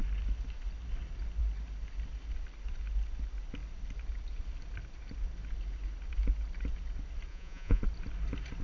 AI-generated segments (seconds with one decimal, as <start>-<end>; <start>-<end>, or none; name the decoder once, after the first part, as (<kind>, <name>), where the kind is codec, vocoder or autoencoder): 7.3-7.8 (vocoder, Vocos)

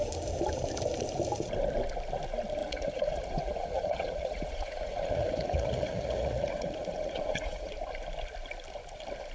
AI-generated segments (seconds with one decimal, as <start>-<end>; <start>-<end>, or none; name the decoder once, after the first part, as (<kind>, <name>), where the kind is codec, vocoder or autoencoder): 2.6-7.7 (vocoder, Vocos)